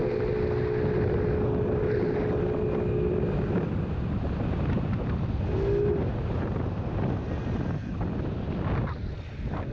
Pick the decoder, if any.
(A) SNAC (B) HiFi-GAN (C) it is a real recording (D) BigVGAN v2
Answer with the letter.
C